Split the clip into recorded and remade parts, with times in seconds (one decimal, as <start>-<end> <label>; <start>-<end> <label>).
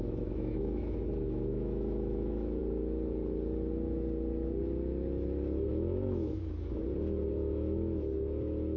0.0-2.6 remade; 2.6-5.7 recorded; 5.7-6.8 remade; 6.8-7.3 recorded; 7.3-8.8 remade